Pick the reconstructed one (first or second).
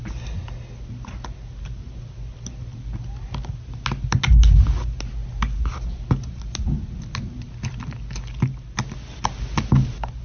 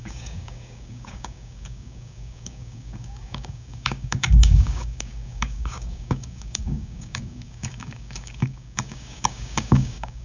second